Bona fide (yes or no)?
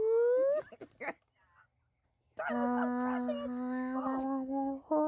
yes